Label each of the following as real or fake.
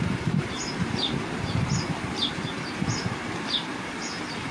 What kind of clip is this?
fake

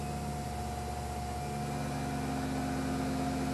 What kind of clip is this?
real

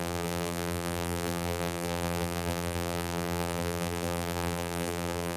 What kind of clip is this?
fake